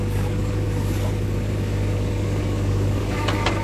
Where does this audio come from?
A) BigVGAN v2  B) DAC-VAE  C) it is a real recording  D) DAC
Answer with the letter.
D